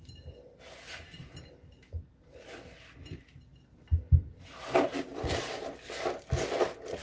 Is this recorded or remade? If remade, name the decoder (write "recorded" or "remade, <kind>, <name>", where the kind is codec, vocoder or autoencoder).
recorded